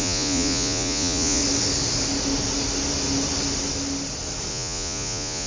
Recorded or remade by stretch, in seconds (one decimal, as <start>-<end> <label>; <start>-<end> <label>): 0.0-1.4 remade; 1.4-4.5 recorded; 4.5-5.5 remade